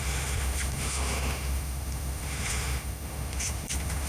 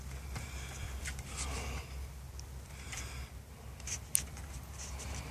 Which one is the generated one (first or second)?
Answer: first